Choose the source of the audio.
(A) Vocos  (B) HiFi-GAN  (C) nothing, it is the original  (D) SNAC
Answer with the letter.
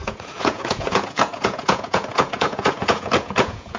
A